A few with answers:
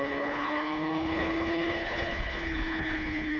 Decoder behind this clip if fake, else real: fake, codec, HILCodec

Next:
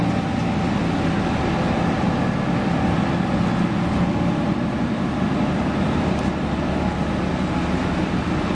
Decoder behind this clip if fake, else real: real